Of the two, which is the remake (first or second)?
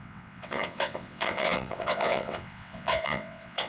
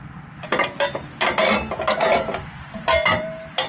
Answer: first